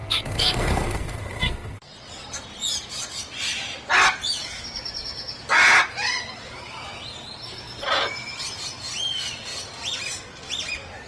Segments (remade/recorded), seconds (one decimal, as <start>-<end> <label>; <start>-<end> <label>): 0.0-1.9 remade; 1.9-11.1 recorded